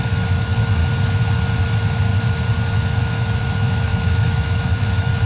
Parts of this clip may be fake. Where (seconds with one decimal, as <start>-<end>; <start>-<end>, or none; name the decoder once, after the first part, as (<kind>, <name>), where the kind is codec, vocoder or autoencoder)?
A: 0.0-0.8 (autoencoder, DAC-VAE); 1.6-2.1; 3.0-5.3